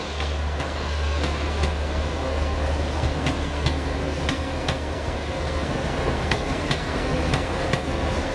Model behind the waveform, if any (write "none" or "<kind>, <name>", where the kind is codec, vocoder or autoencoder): codec, SNAC